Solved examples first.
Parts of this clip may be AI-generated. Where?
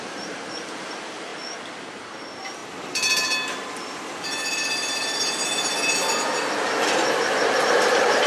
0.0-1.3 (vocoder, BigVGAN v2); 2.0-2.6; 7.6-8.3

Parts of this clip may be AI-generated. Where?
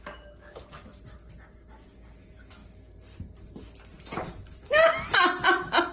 2.6-4.7 (vocoder, BigVGAN v2)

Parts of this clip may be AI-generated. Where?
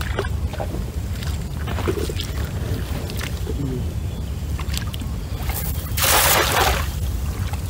0.5-1.6 (vocoder, BigVGAN v2)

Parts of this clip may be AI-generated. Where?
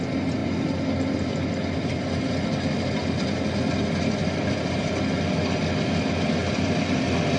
4.2-5.0 (vocoder, BigVGAN v2); 6.4-7.0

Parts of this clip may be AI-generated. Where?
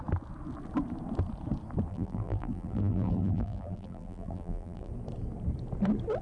1.9-4.9 (vocoder, BigVGAN v2)